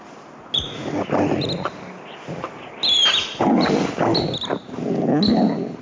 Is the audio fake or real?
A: real